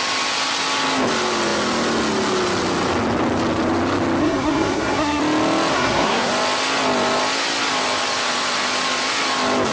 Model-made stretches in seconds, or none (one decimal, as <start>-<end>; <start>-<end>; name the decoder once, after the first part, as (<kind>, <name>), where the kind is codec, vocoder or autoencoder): 4.2-5.2 (codec, SNAC); 5.7-6.3

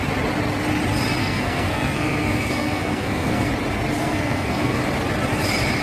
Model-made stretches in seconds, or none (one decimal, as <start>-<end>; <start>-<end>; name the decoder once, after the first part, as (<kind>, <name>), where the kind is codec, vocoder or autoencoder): 1.2-3.5 (codec, SNAC); 4.0-4.8

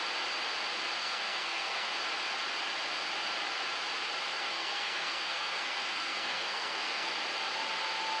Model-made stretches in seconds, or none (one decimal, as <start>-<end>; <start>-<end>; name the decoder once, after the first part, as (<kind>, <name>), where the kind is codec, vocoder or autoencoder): 1.0-1.9 (codec, SNAC); 4.3-7.1